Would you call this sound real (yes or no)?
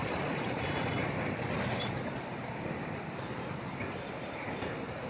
no